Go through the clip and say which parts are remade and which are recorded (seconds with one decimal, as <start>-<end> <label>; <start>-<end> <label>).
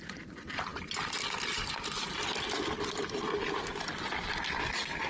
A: 0.0-5.1 recorded